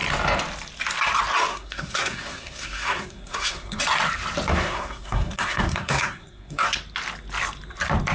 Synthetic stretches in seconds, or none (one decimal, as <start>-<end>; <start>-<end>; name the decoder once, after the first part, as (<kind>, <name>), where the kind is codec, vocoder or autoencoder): 1.5-3.8 (codec, SNAC); 4.5-6.8